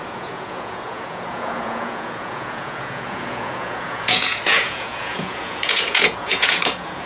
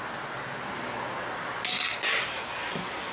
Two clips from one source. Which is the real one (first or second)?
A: second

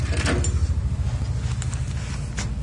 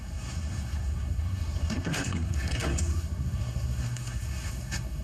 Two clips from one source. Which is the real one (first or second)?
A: first